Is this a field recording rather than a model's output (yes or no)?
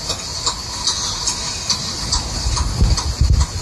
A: yes